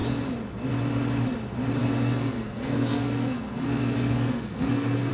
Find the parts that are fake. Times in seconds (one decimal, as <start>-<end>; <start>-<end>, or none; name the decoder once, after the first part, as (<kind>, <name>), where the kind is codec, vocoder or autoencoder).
1.8-5.1 (codec, SNAC)